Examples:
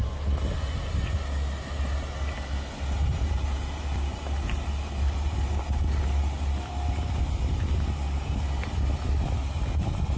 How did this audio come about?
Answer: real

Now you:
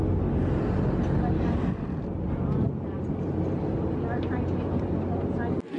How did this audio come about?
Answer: real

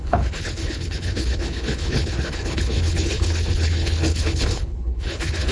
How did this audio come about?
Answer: fake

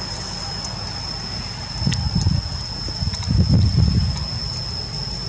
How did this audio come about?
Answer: real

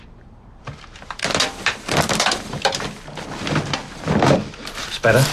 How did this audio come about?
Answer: fake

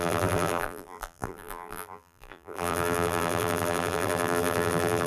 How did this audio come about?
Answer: fake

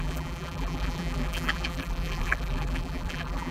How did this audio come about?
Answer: fake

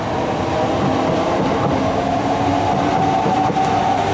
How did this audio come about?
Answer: real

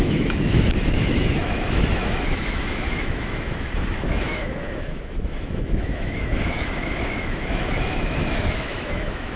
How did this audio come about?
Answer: fake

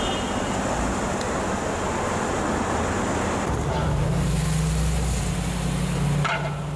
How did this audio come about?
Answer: real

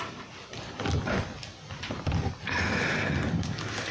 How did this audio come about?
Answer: real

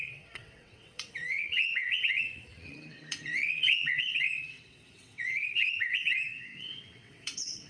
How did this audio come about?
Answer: fake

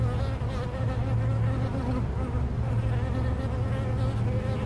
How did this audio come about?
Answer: real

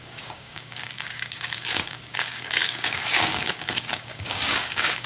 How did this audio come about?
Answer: fake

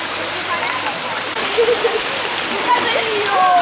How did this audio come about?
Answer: real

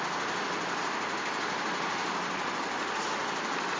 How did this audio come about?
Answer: real